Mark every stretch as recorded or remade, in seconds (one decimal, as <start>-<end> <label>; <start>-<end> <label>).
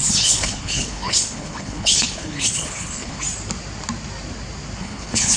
0.0-3.2 remade; 3.2-4.8 recorded; 4.8-5.4 remade